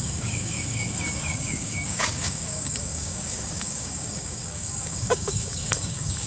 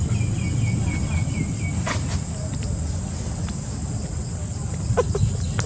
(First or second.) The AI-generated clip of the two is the first